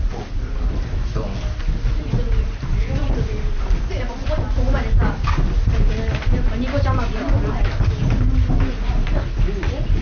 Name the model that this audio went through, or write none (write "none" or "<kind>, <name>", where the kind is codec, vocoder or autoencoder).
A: none